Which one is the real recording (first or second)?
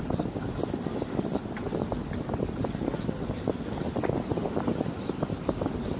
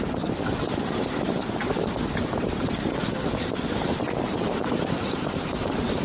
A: first